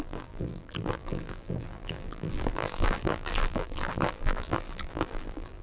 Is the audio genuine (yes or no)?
no